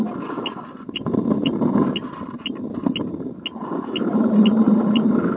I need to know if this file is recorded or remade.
recorded